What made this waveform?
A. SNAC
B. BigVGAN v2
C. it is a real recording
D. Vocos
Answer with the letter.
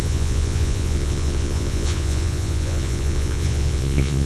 D